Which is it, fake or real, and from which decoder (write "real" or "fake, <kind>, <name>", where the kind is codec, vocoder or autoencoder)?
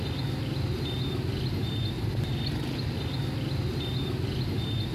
real